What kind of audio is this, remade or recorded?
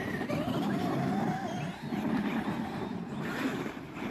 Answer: recorded